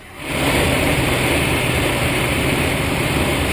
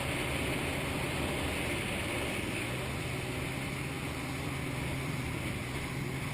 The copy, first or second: first